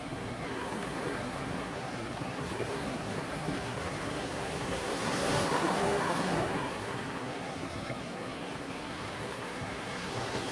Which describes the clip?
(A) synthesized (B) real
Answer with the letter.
A